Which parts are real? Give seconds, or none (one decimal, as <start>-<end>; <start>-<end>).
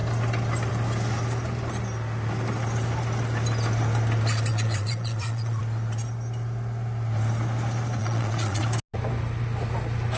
0.0-4.5; 5.6-8.0; 8.6-10.2